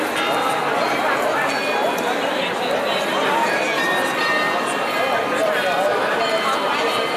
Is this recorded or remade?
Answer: remade